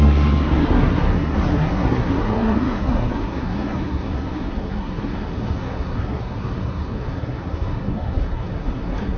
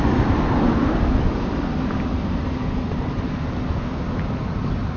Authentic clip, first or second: second